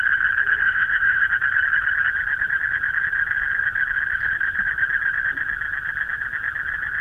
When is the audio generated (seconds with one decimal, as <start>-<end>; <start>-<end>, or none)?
0.6-1.3